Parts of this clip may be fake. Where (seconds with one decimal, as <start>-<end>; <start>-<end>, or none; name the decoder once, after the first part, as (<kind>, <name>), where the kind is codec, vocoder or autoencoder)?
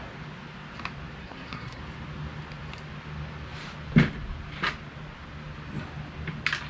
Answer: 1.2-1.8 (codec, SNAC)